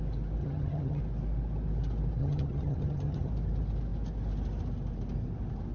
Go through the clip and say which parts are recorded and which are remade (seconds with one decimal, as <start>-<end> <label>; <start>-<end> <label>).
0.0-0.4 recorded; 0.4-1.0 remade; 1.0-2.2 recorded; 2.2-3.3 remade; 3.3-5.7 recorded